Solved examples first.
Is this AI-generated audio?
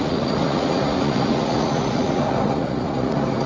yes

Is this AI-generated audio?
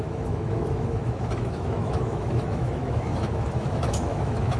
yes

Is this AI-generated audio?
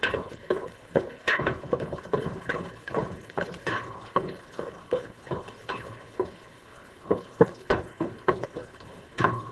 yes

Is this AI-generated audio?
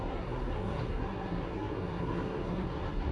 yes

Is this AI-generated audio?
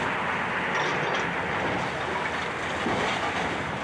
no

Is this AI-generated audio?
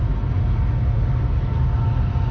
no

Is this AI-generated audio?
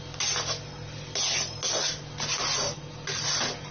no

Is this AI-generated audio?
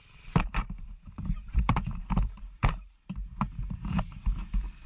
yes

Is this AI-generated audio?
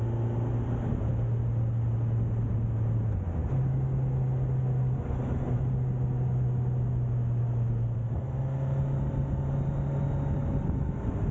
no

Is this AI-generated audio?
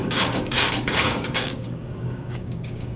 yes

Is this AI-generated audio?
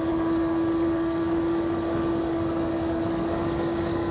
yes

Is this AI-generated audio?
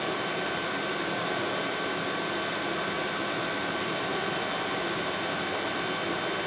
no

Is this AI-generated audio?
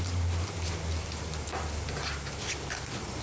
no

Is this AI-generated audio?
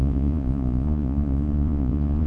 yes